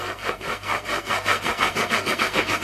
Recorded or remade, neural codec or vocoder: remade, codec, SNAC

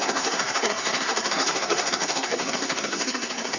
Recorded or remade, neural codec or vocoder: remade, codec, SNAC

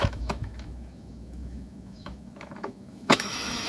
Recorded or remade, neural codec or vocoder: remade, autoencoder, DAC-VAE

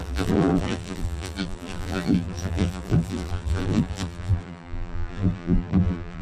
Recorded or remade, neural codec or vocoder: remade, vocoder, BigVGAN v2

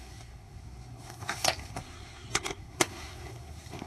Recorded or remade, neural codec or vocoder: remade, codec, SNAC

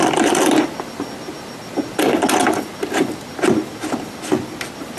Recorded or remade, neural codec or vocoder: recorded